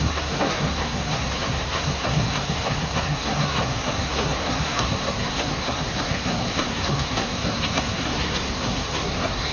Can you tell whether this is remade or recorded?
remade